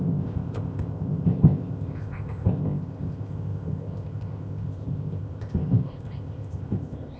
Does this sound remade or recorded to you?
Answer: remade